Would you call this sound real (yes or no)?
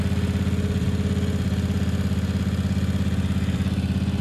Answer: yes